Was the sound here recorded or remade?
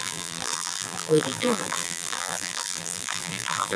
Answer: remade